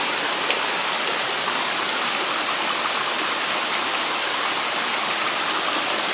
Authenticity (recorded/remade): recorded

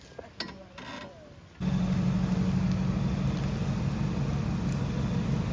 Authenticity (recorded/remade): recorded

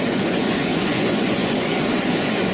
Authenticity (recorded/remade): remade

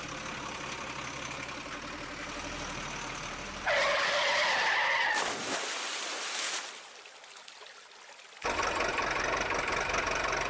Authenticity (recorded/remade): recorded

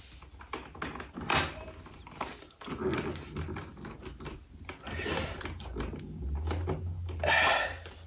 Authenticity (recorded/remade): recorded